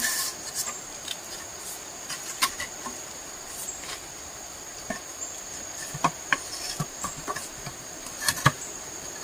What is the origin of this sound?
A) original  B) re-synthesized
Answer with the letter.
B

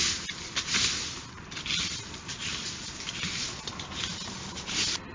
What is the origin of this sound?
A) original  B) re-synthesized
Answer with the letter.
A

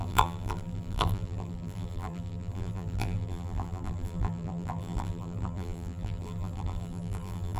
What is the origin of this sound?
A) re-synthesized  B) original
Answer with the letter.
A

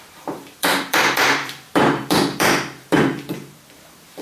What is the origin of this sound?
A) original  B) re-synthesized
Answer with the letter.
B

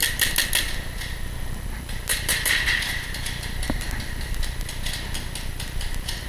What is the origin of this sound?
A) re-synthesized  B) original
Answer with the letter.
B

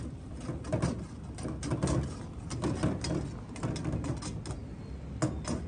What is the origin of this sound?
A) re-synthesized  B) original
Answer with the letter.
B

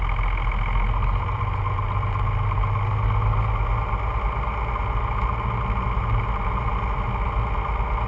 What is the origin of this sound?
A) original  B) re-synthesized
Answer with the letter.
A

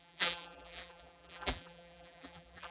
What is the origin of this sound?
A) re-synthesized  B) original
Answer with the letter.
A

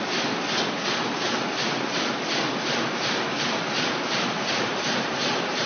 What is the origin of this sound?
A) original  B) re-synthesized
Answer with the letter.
B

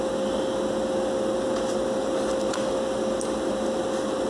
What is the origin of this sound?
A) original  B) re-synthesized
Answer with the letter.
A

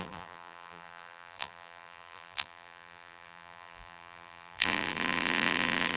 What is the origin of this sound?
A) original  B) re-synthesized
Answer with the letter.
B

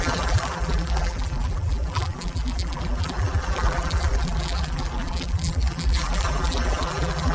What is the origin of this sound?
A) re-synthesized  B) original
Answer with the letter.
A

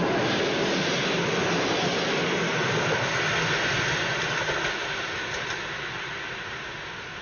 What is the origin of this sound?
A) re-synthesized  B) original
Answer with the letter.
B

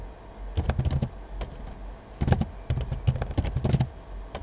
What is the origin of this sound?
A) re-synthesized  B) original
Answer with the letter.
B